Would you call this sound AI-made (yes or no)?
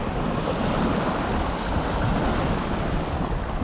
no